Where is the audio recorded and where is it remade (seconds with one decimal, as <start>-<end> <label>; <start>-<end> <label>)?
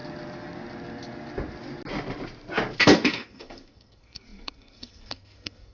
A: 0.0-2.8 recorded; 2.8-5.7 remade